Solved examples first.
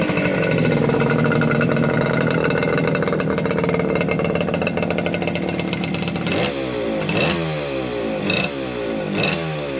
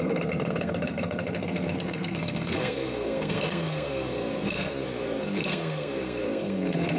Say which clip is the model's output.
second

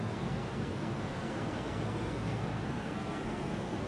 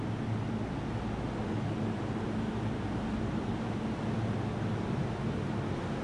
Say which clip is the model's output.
first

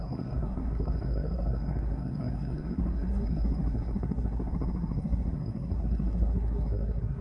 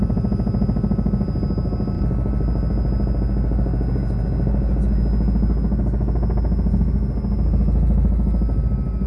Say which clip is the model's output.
first